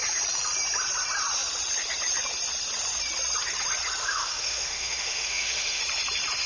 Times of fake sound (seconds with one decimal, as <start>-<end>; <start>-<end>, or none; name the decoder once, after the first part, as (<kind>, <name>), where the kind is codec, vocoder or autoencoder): 4.0-5.8 (autoencoder, DAC-VAE)